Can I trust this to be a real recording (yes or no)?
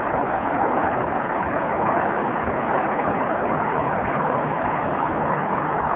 no